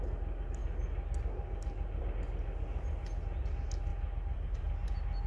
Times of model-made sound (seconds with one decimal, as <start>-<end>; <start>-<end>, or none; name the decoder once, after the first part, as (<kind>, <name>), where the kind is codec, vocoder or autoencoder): 3.9-4.7 (vocoder, BigVGAN v2)